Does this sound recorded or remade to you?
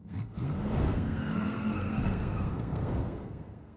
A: remade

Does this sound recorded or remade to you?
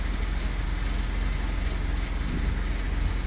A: recorded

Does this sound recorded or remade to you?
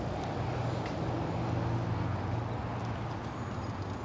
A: recorded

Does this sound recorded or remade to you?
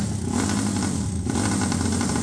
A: recorded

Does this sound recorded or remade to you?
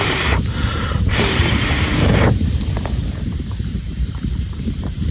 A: remade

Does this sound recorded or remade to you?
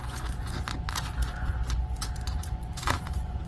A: remade